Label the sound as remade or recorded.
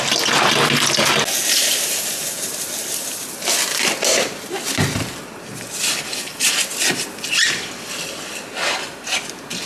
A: recorded